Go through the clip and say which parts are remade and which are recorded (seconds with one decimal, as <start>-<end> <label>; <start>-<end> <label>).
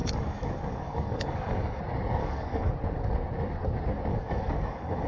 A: 0.0-1.8 remade; 1.8-2.2 recorded; 2.2-2.7 remade; 2.7-4.1 recorded; 4.1-5.1 remade